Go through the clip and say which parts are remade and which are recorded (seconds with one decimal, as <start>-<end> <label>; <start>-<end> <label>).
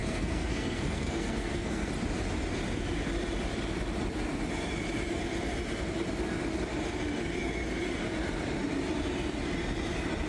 0.0-1.9 remade; 1.9-10.3 recorded